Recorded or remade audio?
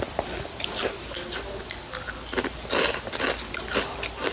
recorded